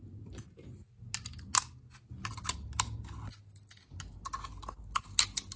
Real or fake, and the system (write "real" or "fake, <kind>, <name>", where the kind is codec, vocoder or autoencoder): real